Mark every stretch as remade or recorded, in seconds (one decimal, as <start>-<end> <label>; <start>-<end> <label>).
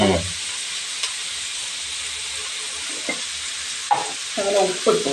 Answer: 0.0-5.1 recorded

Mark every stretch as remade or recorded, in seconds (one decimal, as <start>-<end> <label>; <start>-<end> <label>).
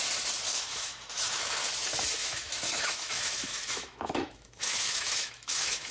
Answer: 0.0-0.5 recorded; 0.5-1.6 remade; 1.6-2.2 recorded; 2.2-5.9 remade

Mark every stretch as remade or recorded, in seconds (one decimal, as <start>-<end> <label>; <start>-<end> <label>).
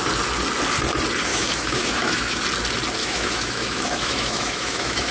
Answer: 0.0-1.3 recorded; 1.3-2.4 remade; 2.4-3.0 recorded; 3.0-5.1 remade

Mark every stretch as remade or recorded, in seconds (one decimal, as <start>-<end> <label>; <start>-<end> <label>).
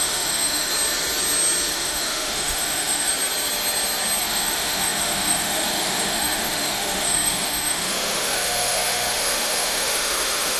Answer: 0.0-0.7 remade; 0.7-1.7 recorded; 1.7-3.1 remade; 3.1-4.2 recorded; 4.2-10.6 remade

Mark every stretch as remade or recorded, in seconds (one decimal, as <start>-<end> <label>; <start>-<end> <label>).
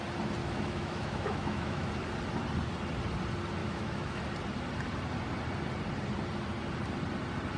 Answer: 0.0-0.4 recorded; 0.4-1.9 remade; 1.9-3.6 recorded; 3.6-4.2 remade; 4.2-7.6 recorded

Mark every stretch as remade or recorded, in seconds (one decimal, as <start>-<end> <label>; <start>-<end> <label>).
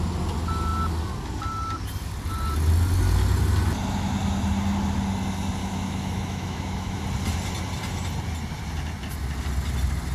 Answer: 0.0-5.6 recorded; 5.6-7.0 remade; 7.0-10.1 recorded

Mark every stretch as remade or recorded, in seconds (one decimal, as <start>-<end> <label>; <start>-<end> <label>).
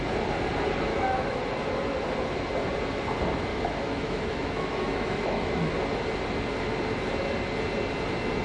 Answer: 0.0-0.9 recorded; 0.9-1.4 remade; 1.4-3.5 recorded; 3.5-5.7 remade; 5.7-8.4 recorded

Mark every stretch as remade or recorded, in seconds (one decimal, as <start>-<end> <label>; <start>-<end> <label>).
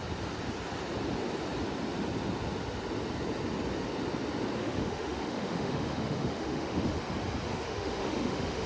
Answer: 0.0-4.6 recorded; 4.6-7.0 remade; 7.0-7.5 recorded; 7.5-8.7 remade